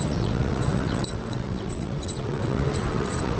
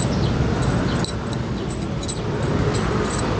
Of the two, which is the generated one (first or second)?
first